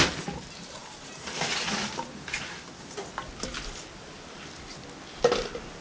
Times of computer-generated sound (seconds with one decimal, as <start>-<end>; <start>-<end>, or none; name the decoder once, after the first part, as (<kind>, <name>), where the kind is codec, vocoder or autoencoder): none